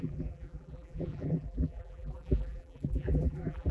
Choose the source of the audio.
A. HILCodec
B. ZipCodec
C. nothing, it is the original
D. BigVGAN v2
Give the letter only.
D